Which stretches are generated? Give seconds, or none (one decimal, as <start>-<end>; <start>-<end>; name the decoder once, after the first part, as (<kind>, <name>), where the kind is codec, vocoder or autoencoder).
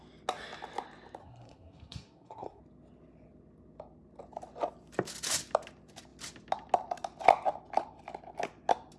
1.2-2.6 (codec, SNAC)